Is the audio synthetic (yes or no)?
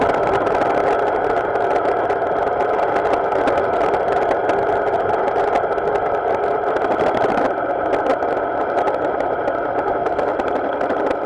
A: no